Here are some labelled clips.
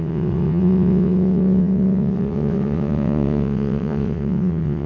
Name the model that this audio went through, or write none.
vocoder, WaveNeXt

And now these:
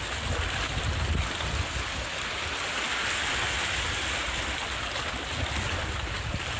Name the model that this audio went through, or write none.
none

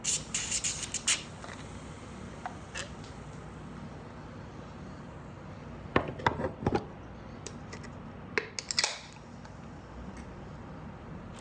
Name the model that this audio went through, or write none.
none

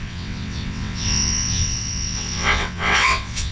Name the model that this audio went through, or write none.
vocoder, WaveNeXt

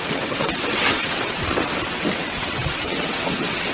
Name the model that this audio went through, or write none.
vocoder, WaveNeXt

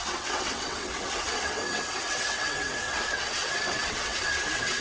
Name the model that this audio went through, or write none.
vocoder, WaveNeXt